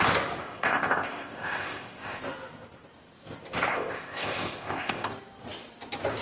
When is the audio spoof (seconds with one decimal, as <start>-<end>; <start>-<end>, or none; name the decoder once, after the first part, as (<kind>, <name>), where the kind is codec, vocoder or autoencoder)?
0.4-2.2 (codec, ZipCodec); 3.7-5.1